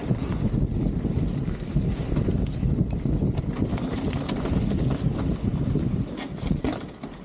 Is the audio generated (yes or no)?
no